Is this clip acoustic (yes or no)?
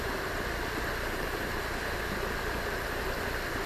no